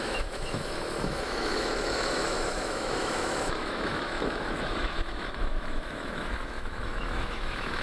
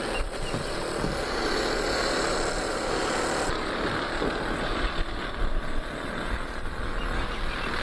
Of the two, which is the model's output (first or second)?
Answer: first